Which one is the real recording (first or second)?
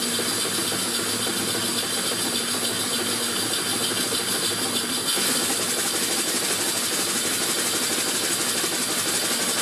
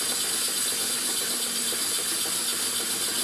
first